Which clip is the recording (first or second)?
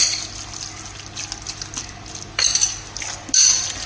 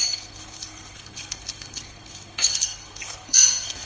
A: first